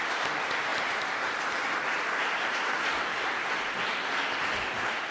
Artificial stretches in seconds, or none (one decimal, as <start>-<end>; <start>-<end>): 0.7-3.7